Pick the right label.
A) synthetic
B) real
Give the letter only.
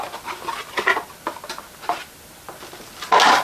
B